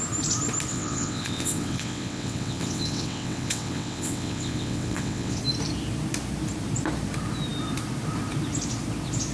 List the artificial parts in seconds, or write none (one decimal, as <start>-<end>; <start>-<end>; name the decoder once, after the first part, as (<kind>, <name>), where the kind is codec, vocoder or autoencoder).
0.7-5.4 (vocoder, WaveNeXt)